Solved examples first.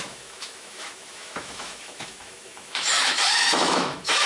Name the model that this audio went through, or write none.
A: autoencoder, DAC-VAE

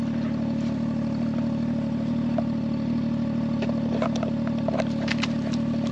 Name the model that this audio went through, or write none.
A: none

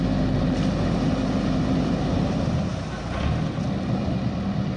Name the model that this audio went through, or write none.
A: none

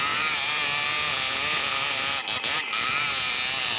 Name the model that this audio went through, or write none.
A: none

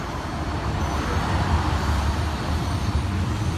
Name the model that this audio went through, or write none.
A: none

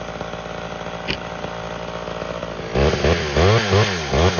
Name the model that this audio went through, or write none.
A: none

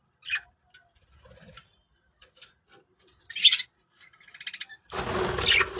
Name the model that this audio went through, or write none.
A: none